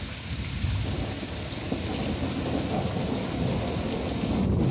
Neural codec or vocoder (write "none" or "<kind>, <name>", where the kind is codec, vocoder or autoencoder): none